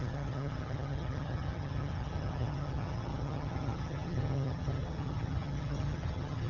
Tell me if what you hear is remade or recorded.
remade